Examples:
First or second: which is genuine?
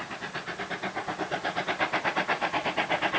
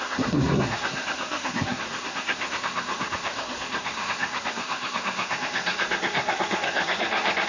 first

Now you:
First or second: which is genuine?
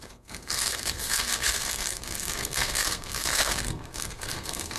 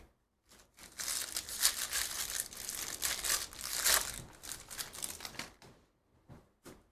second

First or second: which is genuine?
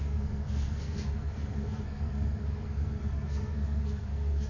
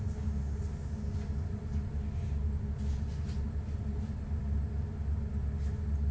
second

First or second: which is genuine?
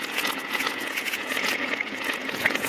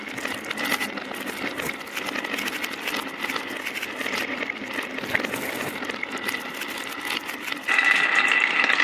second